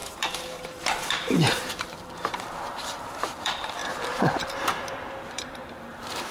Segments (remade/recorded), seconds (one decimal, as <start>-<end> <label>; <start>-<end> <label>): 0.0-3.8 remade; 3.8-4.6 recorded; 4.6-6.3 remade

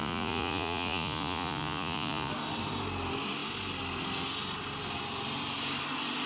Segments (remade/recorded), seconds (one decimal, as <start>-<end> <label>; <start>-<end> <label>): 0.0-2.3 remade; 2.3-6.3 recorded

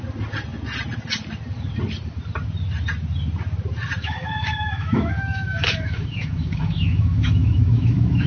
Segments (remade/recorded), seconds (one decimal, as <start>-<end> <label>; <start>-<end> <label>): 0.0-4.0 recorded; 4.0-8.3 remade